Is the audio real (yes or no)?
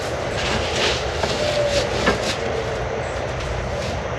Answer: no